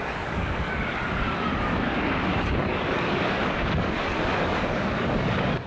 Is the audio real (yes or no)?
no